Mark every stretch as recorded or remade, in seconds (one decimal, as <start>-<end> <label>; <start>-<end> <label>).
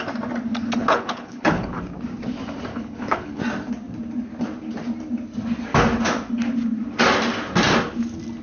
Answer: 0.0-0.8 recorded; 0.8-1.8 remade; 1.8-2.7 recorded; 2.7-3.4 remade; 3.4-8.4 recorded